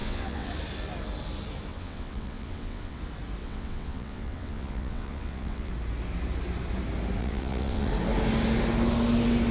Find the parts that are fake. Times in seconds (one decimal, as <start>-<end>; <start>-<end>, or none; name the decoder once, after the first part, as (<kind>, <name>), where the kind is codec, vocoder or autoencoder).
0.0-0.5 (vocoder, WaveNeXt); 1.7-3.0; 3.4-5.7; 7.2-7.9